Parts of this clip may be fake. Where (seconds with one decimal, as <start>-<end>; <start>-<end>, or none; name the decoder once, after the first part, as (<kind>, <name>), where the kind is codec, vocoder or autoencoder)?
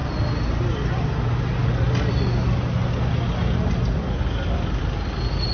none